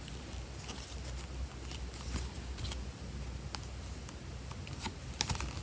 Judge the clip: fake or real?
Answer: real